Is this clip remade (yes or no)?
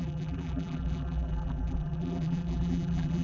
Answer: yes